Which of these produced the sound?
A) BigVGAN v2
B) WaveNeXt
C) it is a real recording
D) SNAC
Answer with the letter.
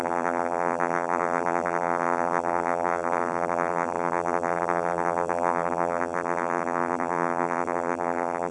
A